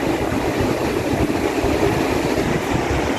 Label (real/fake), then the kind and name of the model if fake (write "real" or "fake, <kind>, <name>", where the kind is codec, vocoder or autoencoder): real